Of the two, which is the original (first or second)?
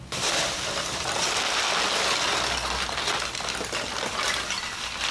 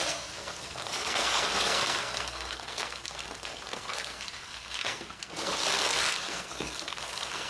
first